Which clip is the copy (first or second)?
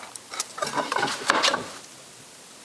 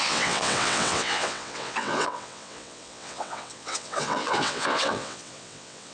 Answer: second